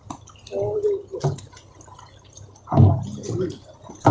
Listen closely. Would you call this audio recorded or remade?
recorded